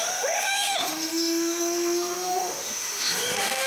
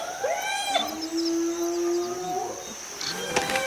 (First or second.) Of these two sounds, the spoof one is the first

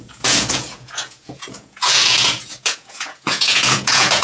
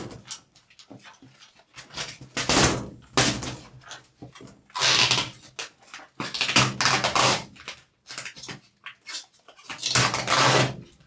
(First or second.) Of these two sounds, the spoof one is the first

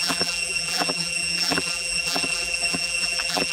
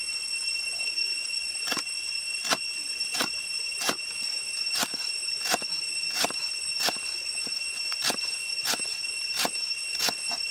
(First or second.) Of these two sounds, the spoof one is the first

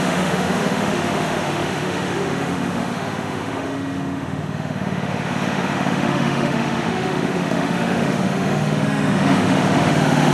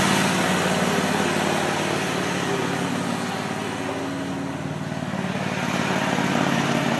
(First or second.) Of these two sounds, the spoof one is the first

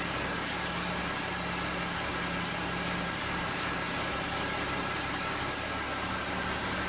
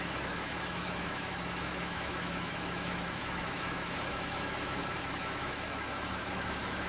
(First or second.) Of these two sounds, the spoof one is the second